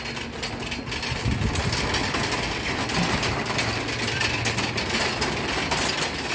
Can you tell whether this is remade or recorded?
recorded